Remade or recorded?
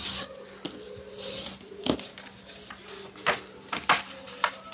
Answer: recorded